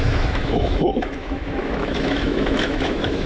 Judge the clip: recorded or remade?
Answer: remade